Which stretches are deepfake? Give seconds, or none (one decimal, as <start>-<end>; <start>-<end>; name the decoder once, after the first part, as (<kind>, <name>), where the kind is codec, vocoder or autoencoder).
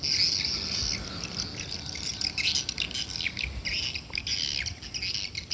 none